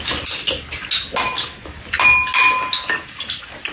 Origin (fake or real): real